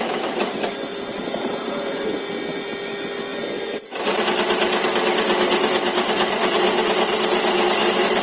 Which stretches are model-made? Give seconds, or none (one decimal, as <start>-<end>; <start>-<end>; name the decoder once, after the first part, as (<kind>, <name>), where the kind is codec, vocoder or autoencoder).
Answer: 1.1-1.7 (vocoder, Vocos)